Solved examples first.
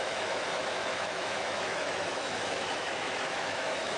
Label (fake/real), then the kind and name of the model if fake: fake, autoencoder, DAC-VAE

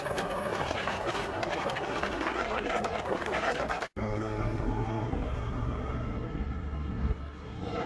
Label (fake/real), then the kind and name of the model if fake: fake, codec, SNAC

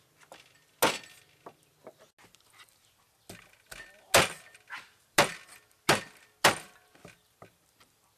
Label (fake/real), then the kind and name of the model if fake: real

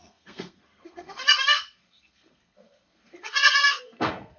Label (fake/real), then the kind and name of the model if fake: fake, codec, SNAC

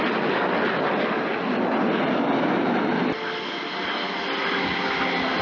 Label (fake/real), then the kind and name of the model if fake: real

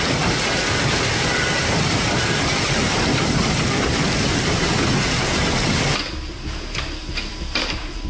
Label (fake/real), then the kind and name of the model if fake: fake, vocoder, BigVGAN v2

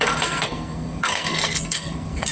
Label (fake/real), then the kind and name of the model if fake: fake, codec, SNAC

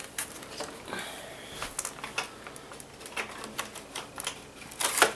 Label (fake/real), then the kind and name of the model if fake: real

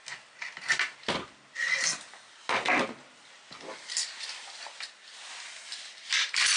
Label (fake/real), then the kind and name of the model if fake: real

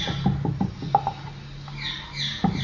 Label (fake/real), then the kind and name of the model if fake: real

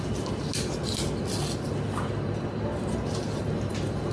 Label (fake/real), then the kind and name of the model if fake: real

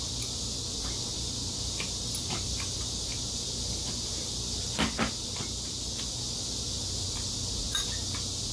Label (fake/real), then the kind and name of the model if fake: real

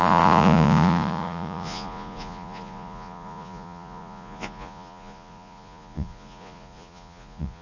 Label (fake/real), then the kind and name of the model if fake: fake, vocoder, Vocos